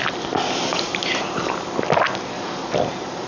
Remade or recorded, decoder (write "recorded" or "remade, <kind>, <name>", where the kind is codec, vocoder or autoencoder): recorded